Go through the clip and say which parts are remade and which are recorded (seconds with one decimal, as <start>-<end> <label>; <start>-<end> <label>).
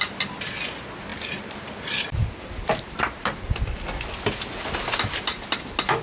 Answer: 0.0-6.0 recorded